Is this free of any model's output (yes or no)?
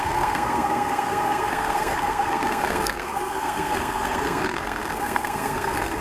no